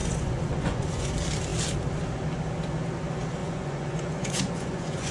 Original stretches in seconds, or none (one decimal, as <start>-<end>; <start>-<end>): 1.1-3.4